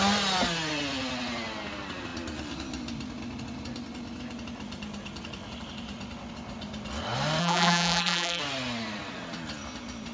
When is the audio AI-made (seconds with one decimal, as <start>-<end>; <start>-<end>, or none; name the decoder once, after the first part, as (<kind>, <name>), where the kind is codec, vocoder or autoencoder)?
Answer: 7.4-8.4 (vocoder, BigVGAN v2)